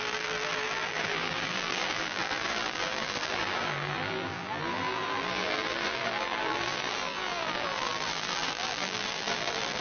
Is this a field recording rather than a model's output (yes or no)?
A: no